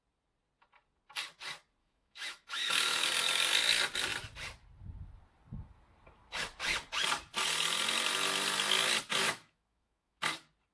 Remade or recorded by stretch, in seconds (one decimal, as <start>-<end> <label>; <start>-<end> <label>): 0.0-1.8 recorded; 1.8-3.1 remade; 3.1-9.2 recorded; 9.2-10.2 remade; 10.2-10.7 recorded